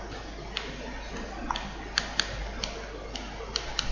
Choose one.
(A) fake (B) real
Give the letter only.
B